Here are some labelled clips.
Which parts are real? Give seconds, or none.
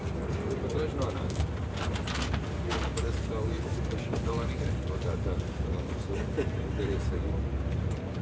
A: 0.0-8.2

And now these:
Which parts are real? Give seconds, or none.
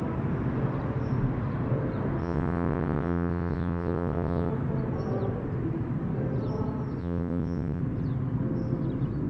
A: 0.0-2.2; 4.5-7.0; 7.8-9.3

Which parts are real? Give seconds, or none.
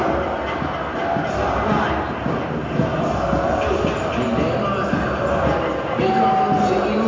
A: 0.0-7.1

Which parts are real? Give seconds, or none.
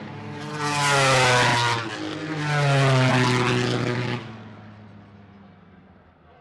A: 0.0-6.4